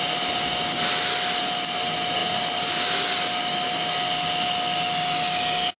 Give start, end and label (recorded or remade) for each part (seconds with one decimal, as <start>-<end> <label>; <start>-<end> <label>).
0.0-5.8 recorded